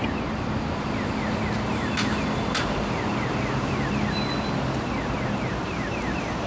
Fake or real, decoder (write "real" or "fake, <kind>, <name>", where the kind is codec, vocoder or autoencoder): real